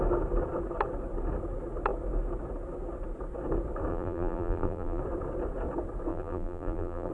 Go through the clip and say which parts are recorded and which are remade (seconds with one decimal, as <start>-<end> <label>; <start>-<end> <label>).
0.0-3.9 recorded; 3.9-5.0 remade; 5.0-6.1 recorded; 6.1-7.1 remade

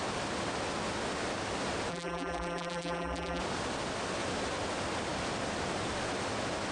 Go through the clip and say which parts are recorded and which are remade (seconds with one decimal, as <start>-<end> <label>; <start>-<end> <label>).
0.0-1.9 recorded; 1.9-3.4 remade; 3.4-6.7 recorded